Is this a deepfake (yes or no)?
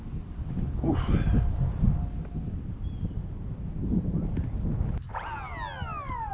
no